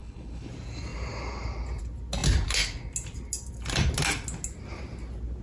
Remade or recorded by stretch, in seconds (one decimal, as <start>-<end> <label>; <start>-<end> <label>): 0.0-0.5 remade; 0.5-5.4 recorded

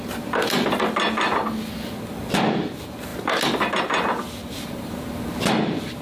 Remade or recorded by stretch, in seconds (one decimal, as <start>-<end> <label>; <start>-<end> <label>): 0.0-4.4 recorded; 4.4-5.3 remade; 5.3-6.0 recorded

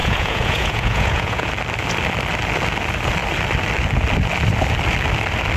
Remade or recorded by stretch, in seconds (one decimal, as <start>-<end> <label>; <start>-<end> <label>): 0.0-1.5 remade; 1.5-5.6 recorded

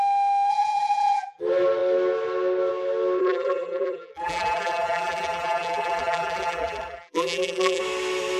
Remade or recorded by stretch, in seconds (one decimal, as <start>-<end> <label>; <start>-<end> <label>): 0.0-0.5 recorded; 0.5-1.4 remade; 1.4-3.2 recorded; 3.2-7.8 remade; 7.8-8.4 recorded